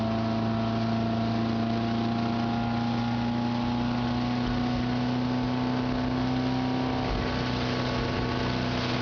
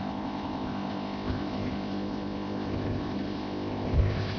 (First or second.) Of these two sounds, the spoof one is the second